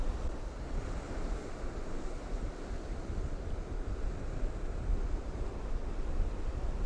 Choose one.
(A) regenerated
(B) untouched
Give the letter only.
B